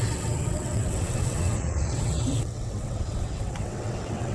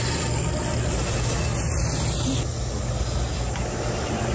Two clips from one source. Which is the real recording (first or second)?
second